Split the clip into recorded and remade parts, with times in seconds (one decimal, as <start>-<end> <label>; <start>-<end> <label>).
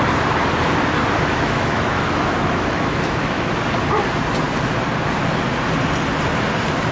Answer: 0.0-1.3 recorded; 1.3-3.5 remade; 3.5-6.9 recorded